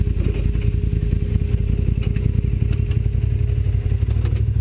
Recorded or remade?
recorded